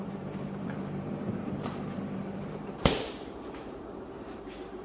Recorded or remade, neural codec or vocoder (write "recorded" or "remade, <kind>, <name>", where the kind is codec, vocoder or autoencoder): remade, vocoder, BigVGAN v2